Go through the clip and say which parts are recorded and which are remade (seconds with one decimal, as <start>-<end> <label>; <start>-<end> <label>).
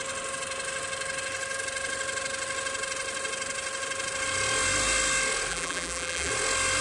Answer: 0.0-5.5 recorded; 5.5-6.3 remade; 6.3-6.8 recorded